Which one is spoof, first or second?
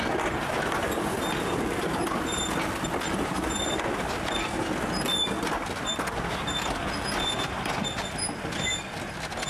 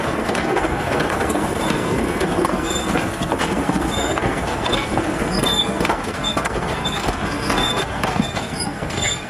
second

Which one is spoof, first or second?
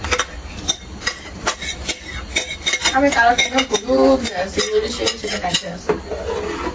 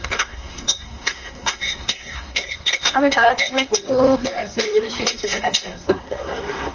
second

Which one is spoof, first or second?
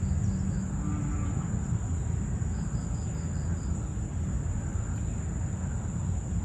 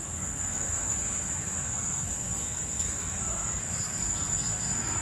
second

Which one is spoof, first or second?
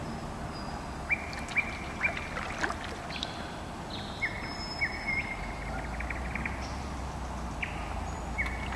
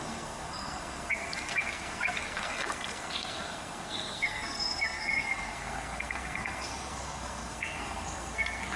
second